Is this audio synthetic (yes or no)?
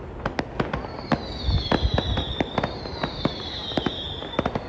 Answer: no